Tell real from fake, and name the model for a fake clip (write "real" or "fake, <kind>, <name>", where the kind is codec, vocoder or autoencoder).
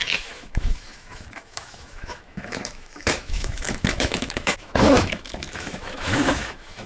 fake, autoencoder, DAC-VAE